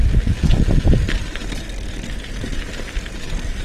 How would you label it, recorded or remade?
recorded